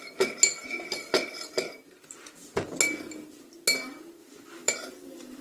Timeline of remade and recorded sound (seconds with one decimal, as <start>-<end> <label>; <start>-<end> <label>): 0.0-4.2 recorded; 4.2-5.4 remade